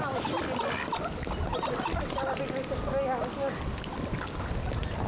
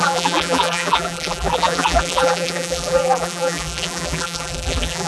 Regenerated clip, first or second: second